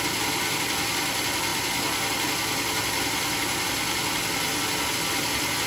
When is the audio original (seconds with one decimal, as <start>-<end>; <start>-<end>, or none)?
0.0-5.7